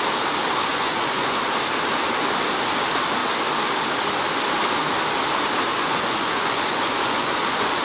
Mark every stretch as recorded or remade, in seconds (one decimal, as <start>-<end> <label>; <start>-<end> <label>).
0.0-0.7 recorded; 0.7-1.4 remade; 1.4-5.7 recorded; 5.7-7.8 remade